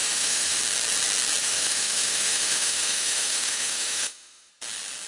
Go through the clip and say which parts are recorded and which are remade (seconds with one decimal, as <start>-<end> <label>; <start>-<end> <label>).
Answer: 0.0-0.6 remade; 0.6-1.4 recorded; 1.4-4.5 remade; 4.5-5.1 recorded